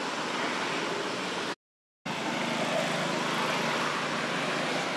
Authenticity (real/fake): real